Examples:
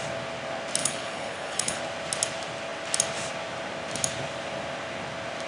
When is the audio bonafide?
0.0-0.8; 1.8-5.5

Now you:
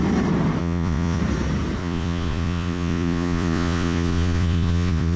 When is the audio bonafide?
0.0-0.6; 1.2-1.8

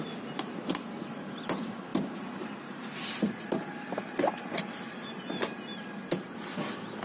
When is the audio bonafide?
0.0-7.0

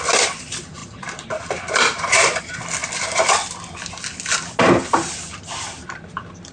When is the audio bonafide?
2.8-5.6

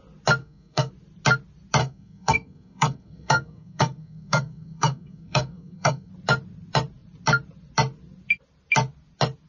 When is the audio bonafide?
0.0-0.4; 0.9-1.8; 6.1-9.5

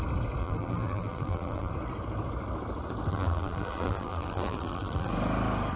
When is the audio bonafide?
0.0-0.4; 1.7-3.1; 5.1-5.8

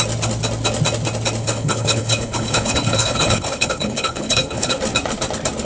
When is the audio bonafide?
0.0-1.4; 4.8-5.6

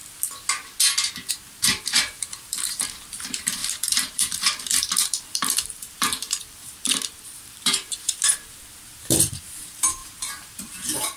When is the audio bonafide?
0.0-1.3